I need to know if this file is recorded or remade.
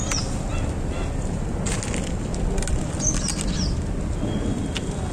recorded